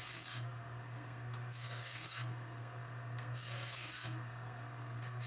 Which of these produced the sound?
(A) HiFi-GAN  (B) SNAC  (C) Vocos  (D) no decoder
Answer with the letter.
B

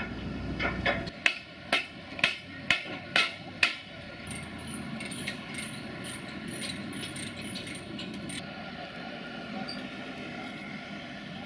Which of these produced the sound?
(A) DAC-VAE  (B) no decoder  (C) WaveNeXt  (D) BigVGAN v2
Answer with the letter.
B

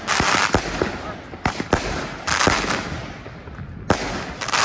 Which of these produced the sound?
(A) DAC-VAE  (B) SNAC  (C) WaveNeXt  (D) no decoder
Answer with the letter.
D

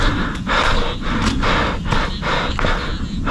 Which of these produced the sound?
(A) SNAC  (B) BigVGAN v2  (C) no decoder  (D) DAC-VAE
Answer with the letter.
C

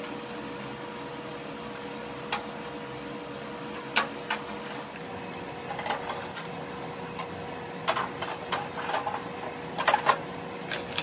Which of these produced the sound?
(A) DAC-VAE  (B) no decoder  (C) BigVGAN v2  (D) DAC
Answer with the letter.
B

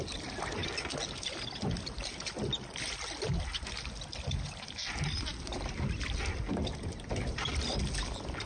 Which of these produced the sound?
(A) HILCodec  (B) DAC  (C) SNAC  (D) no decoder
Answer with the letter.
D